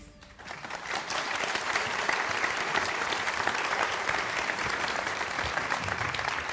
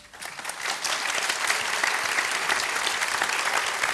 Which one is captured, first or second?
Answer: second